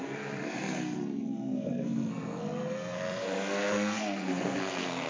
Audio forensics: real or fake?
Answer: fake